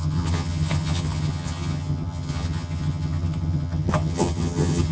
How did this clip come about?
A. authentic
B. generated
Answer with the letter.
B